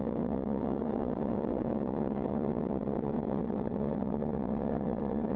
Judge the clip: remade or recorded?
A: remade